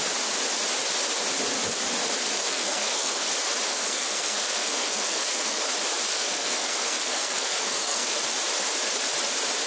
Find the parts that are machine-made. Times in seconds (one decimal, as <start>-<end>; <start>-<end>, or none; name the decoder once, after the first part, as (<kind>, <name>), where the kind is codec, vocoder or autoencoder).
2.4-3.3 (codec, SNAC); 3.7-5.6; 6.1-8.2